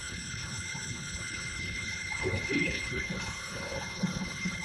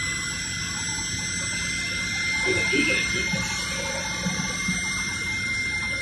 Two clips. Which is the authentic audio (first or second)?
second